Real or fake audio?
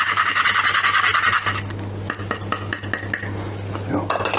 real